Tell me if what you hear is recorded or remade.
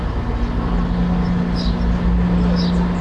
recorded